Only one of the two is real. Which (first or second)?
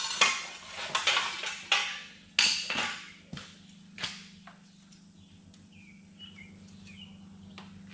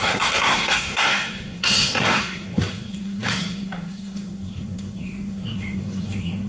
first